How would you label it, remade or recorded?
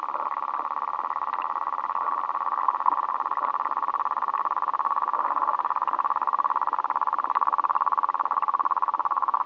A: recorded